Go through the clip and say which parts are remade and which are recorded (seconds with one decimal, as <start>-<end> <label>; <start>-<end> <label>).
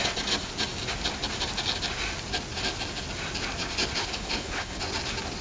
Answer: 0.0-4.0 recorded; 4.0-4.8 remade; 4.8-5.4 recorded